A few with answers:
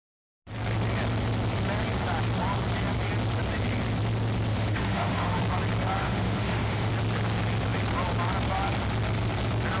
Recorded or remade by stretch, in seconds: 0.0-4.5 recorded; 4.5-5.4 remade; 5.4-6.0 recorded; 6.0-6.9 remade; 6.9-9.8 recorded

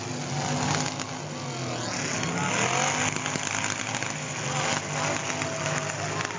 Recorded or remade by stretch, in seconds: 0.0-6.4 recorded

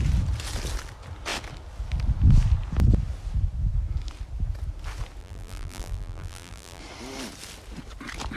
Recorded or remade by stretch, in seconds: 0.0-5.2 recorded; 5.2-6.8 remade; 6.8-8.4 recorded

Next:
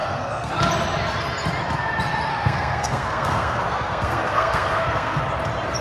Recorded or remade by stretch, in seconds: 0.0-0.5 remade; 0.5-2.3 recorded; 2.3-5.2 remade; 5.2-5.8 recorded

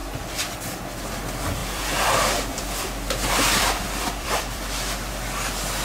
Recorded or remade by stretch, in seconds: 0.0-0.6 remade; 0.6-1.6 recorded; 1.6-5.1 remade; 5.1-5.8 recorded